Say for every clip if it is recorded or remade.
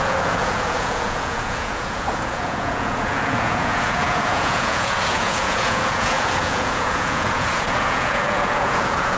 remade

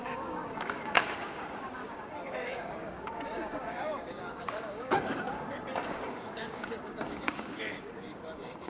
remade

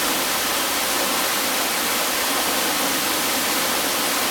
recorded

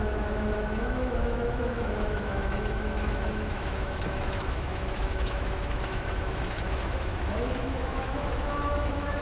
remade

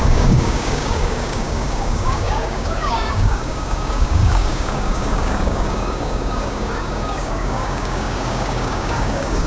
remade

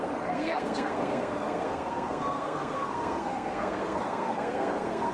remade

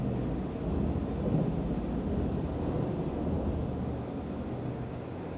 recorded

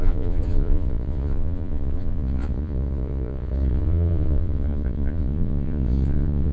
remade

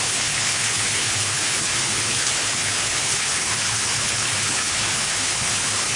remade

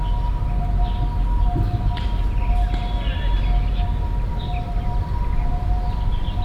recorded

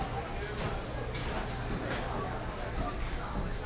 recorded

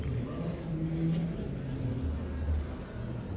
recorded